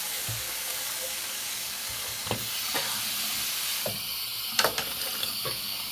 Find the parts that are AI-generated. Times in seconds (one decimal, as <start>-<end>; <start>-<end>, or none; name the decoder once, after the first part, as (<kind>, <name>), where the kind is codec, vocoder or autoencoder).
0.0-2.2 (codec, DAC); 5.2-5.9